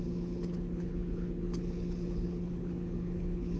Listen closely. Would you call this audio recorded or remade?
remade